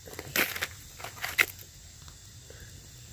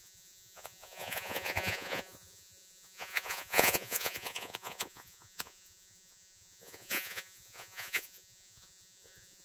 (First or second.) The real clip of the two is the first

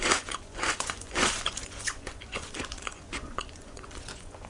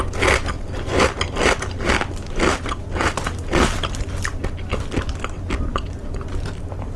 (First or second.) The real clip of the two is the second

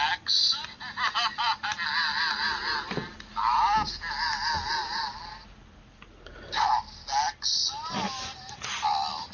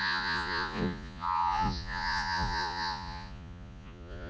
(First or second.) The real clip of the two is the first